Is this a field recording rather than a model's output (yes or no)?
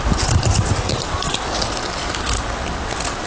yes